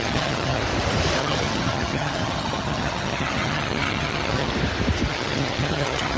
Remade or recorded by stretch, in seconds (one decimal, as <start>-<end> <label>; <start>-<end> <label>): 0.0-0.6 remade; 0.6-1.2 recorded; 1.2-4.5 remade; 4.5-5.1 recorded; 5.1-6.2 remade